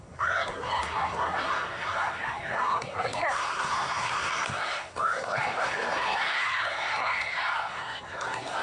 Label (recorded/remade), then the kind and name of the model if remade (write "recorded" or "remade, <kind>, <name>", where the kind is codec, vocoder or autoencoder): remade, codec, SNAC